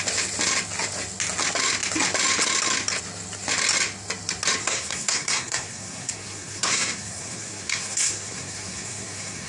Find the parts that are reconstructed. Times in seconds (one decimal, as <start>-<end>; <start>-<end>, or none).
4.6-9.5